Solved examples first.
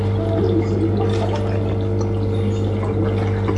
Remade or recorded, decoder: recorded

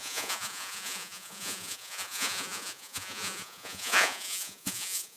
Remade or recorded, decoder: remade, vocoder, Vocos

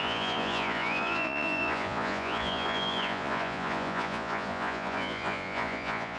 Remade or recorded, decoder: remade, vocoder, Vocos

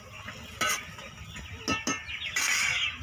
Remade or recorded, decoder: recorded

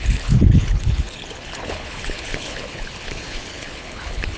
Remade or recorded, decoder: remade, codec, HILCodec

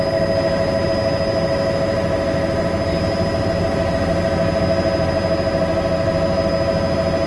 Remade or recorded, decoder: recorded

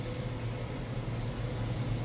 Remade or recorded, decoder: recorded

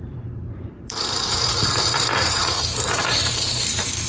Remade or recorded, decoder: remade, vocoder, BigVGAN v2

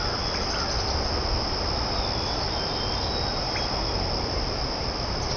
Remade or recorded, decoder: recorded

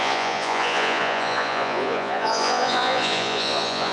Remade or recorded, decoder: remade, vocoder, Vocos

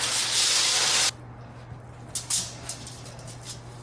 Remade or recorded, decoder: recorded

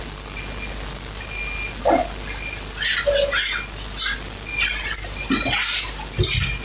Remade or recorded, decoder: recorded